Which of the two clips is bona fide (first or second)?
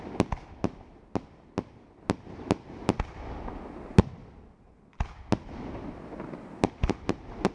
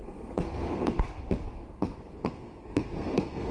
first